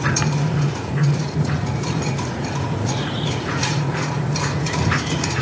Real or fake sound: fake